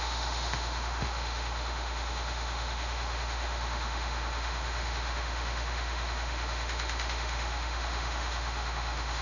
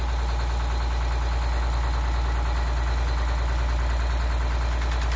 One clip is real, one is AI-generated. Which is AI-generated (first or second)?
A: first